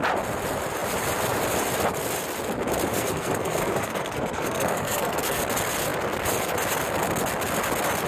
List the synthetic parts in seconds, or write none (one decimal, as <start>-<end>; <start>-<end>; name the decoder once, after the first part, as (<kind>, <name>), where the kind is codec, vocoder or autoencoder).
2.9-5.4 (codec, SNAC)